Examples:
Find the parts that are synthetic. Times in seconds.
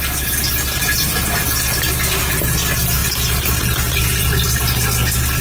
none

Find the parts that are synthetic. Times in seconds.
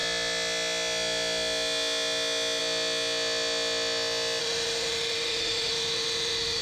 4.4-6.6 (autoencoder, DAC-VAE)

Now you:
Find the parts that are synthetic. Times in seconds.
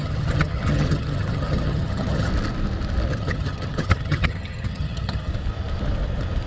0.0-2.3 (vocoder, HiFi-GAN); 3.1-5.3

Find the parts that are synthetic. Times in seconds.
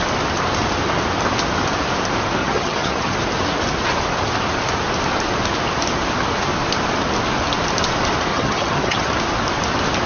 2.4-3.1 (vocoder, HiFi-GAN); 8.3-9.1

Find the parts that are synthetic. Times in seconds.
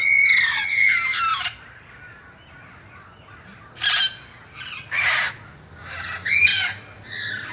none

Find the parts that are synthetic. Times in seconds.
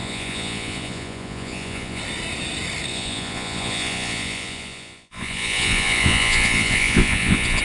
0.0-2.0 (vocoder, Vocos); 2.9-7.6